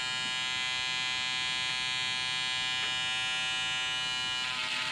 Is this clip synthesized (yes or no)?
no